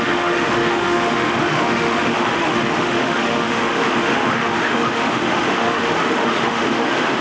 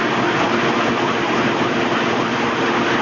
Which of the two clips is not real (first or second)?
first